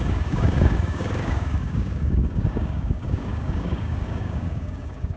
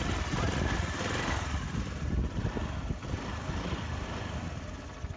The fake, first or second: first